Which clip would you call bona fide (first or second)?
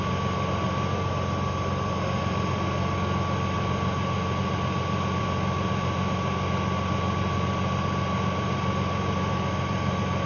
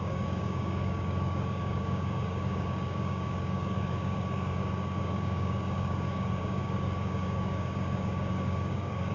first